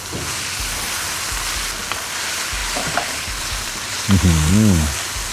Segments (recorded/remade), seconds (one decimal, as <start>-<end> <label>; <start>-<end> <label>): 0.0-2.6 recorded; 2.6-4.5 remade; 4.5-5.3 recorded

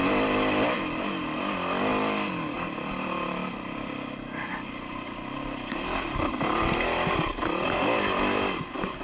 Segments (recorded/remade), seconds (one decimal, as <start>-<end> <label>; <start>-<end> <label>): 0.0-9.0 recorded

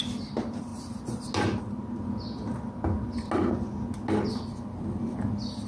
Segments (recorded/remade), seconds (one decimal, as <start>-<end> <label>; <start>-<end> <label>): 0.0-5.7 recorded

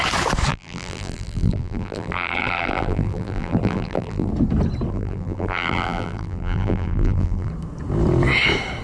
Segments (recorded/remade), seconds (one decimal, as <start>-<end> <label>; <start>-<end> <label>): 0.0-0.5 recorded; 0.5-4.3 remade; 4.3-4.9 recorded; 4.9-7.5 remade; 7.5-8.8 recorded

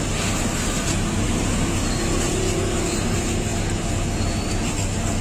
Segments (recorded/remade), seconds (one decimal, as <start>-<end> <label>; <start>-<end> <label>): 0.0-5.2 recorded

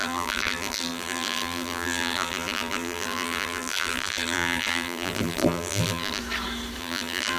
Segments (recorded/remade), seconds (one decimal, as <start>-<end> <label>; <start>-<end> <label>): 0.0-6.2 remade; 6.2-6.8 recorded; 6.8-7.4 remade

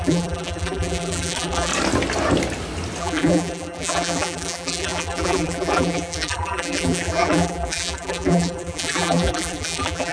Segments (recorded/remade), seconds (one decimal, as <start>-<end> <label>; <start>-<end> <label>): 0.0-1.7 remade; 1.7-3.0 recorded; 3.0-10.1 remade

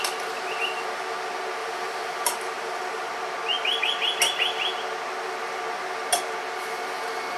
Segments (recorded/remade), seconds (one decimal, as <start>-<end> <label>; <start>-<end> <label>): 0.0-1.6 recorded; 1.6-3.1 remade; 3.1-7.4 recorded